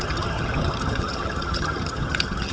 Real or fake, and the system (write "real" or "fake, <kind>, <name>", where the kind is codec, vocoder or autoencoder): fake, vocoder, HiFi-GAN